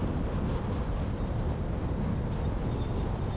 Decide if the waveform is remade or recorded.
recorded